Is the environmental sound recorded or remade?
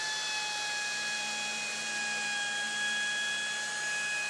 recorded